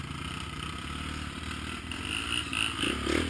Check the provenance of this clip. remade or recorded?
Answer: recorded